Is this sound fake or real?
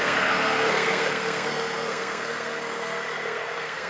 fake